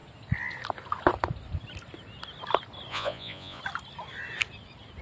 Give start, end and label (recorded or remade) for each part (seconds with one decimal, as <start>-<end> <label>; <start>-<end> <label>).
0.0-2.9 recorded; 2.9-3.6 remade; 3.6-5.0 recorded